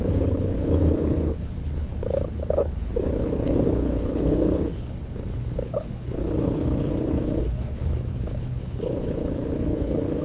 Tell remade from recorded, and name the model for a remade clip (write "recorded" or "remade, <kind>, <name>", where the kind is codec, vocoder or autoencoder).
remade, codec, HILCodec